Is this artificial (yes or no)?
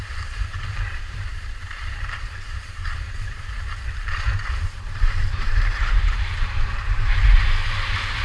yes